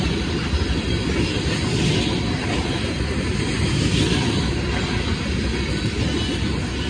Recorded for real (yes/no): yes